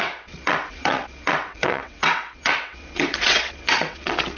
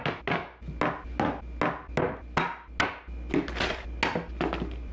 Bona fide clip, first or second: second